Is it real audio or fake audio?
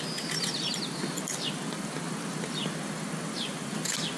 real